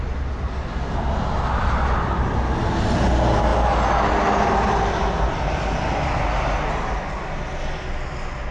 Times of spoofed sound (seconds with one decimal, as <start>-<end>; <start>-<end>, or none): none